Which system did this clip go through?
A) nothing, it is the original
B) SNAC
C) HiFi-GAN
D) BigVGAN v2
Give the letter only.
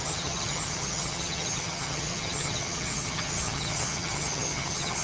C